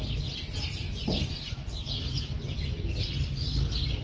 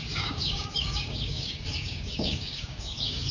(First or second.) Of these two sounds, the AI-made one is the second